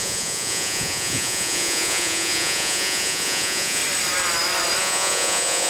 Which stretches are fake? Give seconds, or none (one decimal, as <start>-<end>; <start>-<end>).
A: 0.0-3.8; 4.8-5.7